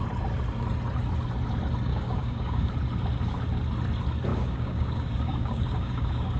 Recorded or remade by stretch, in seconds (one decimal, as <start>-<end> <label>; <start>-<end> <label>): 0.0-1.9 recorded; 1.9-2.7 remade; 2.7-4.3 recorded; 4.3-6.4 remade